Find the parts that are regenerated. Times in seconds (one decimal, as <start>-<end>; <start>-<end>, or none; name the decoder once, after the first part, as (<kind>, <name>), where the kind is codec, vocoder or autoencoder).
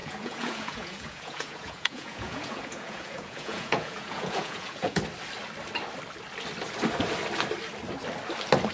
0.0-5.0 (vocoder, Vocos)